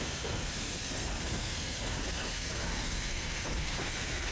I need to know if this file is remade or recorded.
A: remade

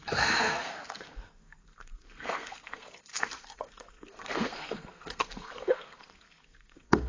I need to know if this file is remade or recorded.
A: remade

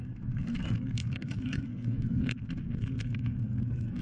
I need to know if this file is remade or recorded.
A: remade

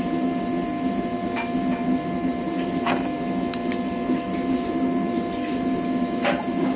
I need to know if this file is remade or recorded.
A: recorded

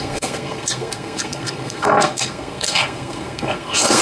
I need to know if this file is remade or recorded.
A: remade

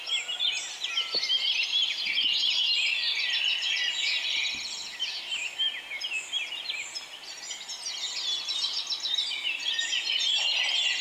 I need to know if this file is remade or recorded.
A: recorded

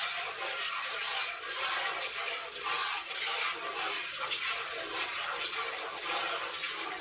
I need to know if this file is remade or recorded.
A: recorded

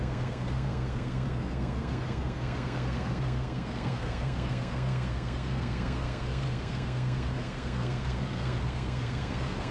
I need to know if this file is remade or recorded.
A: remade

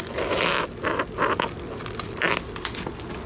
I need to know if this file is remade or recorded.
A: recorded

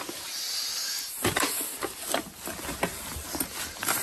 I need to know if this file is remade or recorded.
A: recorded